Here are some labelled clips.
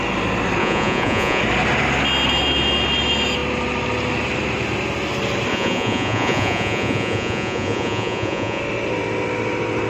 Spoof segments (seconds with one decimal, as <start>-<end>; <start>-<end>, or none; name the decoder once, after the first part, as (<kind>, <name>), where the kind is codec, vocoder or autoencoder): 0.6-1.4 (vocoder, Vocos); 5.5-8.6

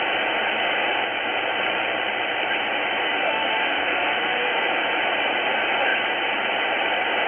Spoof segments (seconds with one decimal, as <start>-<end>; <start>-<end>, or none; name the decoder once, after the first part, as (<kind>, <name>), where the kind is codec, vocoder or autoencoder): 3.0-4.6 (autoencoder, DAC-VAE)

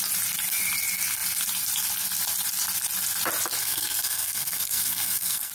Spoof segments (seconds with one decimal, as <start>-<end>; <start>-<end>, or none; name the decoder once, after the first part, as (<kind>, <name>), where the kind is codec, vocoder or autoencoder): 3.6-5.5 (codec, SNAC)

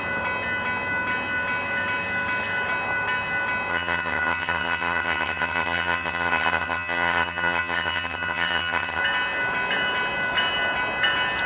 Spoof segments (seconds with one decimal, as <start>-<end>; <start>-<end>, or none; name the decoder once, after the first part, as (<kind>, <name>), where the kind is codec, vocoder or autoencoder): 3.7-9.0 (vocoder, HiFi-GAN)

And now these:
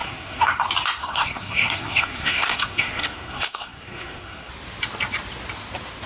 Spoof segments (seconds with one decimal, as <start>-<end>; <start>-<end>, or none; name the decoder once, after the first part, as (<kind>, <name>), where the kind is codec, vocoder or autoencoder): 0.0-0.5 (codec, SNAC); 1.0-4.5

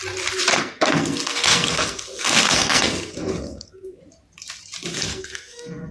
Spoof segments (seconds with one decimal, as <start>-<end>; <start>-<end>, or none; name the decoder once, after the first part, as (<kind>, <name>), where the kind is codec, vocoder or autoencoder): 0.5-4.0 (codec, SNAC); 4.9-5.9

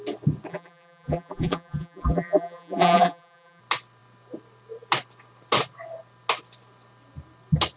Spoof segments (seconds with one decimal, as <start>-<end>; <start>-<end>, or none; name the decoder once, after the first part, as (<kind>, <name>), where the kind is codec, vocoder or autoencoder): 0.5-3.6 (vocoder, BigVGAN v2)

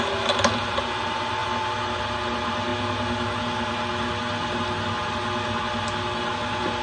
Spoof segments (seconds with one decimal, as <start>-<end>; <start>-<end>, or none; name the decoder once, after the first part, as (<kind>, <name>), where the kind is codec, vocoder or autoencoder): none